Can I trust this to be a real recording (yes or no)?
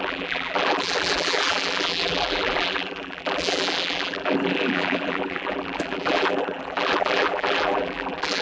no